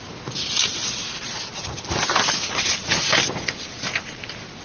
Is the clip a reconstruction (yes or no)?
no